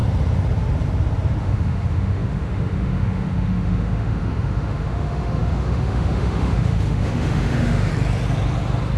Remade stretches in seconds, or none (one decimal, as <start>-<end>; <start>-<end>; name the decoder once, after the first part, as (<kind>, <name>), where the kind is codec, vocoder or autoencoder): 1.4-7.9 (autoencoder, DAC-VAE)